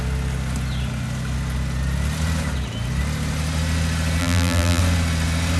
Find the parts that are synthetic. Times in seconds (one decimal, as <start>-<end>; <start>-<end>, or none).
4.2-4.8